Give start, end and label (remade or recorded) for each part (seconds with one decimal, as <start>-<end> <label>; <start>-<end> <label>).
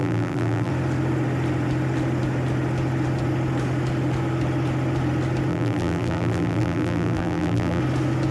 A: 0.0-0.7 remade; 0.7-5.5 recorded; 5.5-7.8 remade; 7.8-8.3 recorded